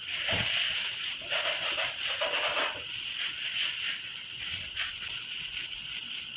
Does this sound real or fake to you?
real